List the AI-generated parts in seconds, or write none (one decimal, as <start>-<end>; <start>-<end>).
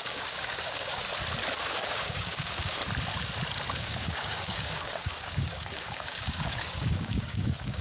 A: 0.0-1.0; 1.6-2.8; 3.8-7.8